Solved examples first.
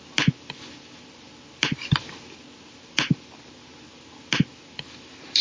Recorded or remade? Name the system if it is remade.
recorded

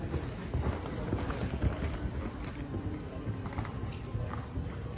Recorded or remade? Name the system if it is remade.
recorded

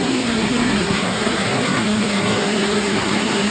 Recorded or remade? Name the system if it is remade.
remade, codec, SNAC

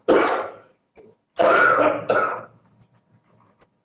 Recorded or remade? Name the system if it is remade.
recorded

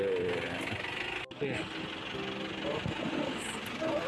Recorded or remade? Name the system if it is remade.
recorded